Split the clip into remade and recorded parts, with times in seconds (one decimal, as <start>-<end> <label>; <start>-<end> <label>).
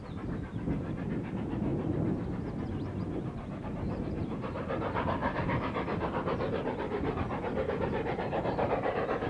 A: 0.0-1.7 remade; 1.7-3.6 recorded; 3.6-5.2 remade; 5.2-7.8 recorded; 7.8-9.3 remade